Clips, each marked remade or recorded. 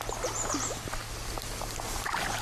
recorded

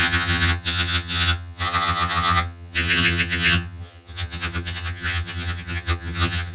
remade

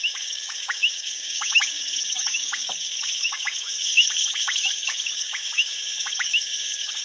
remade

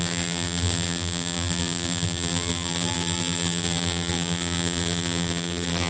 remade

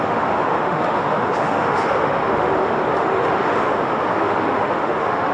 remade